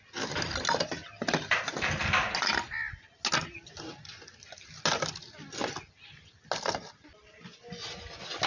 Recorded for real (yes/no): yes